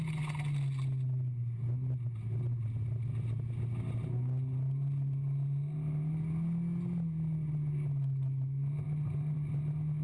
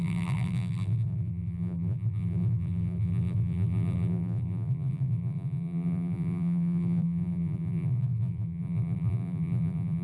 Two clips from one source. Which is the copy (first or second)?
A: second